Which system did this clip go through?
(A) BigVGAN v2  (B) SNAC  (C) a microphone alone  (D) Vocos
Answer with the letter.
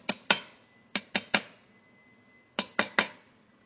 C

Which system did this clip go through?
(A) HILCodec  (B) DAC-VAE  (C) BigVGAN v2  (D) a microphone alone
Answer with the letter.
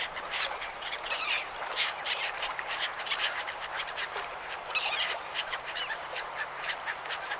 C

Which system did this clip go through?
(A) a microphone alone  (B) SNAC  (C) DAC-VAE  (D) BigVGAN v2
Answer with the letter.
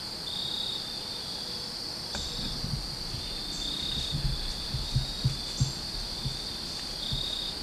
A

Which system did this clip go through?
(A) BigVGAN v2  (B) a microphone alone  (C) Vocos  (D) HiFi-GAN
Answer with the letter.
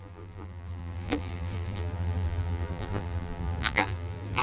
A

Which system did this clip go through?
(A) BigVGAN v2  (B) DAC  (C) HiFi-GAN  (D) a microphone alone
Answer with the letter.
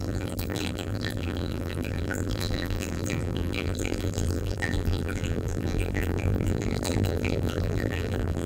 A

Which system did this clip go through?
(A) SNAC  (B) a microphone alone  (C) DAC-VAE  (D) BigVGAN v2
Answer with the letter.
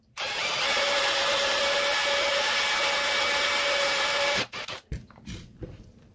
D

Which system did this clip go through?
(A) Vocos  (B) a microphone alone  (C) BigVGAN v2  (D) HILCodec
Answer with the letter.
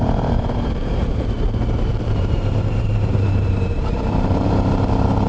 C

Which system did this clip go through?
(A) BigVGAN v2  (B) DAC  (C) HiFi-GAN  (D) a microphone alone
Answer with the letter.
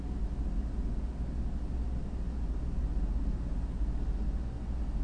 D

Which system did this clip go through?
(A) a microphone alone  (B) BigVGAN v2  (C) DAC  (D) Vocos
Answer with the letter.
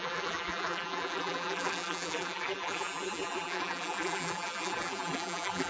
B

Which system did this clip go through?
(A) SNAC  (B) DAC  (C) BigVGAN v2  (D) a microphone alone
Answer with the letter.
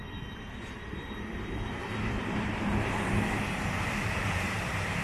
C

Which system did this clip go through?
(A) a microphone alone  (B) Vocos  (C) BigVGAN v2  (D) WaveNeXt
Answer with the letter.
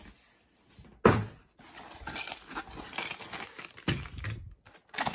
A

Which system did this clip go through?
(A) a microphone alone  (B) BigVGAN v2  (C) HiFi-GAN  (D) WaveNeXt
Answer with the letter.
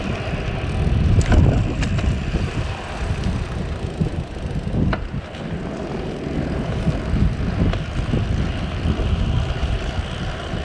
A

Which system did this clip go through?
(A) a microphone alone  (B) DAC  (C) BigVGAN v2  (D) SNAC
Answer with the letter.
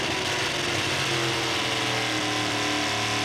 A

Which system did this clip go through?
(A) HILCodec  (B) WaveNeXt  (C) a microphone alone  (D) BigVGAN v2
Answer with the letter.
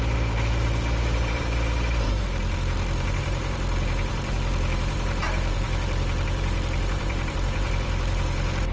D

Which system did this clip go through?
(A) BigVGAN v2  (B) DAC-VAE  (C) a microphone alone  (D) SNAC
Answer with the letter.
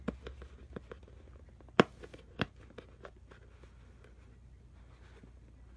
C